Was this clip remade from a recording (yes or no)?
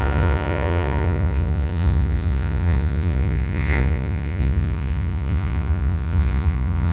yes